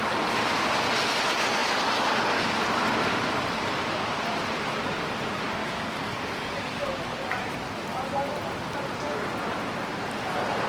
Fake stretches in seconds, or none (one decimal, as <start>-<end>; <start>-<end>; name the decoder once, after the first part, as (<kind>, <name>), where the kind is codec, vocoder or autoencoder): 5.6-6.8 (codec, DAC)

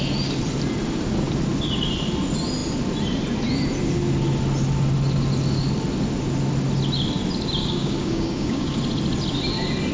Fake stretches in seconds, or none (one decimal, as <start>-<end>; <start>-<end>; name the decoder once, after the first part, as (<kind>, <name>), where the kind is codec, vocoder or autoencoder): 7.6-8.8 (codec, DAC)